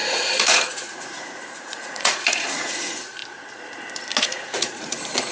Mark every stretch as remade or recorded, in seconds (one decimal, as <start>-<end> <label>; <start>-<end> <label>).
0.0-3.2 remade; 3.2-4.2 recorded; 4.2-5.3 remade